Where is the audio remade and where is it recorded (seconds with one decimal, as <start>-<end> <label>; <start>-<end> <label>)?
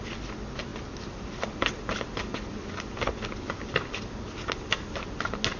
0.0-5.6 recorded